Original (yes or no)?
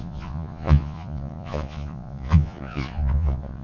no